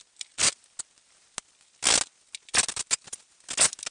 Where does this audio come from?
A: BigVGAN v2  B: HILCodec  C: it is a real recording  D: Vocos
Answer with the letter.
C